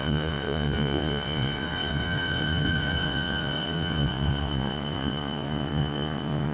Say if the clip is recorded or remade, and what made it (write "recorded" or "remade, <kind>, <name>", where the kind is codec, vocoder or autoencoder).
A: remade, vocoder, WaveNeXt